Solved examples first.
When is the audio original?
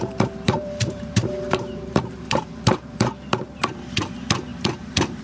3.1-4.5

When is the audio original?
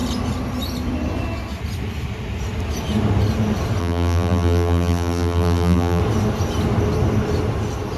0.0-3.8; 6.0-8.0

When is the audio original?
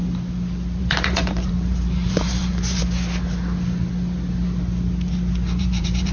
0.0-0.8; 2.8-5.6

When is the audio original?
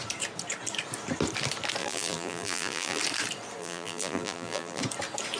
0.0-1.8; 3.0-3.6; 4.8-5.4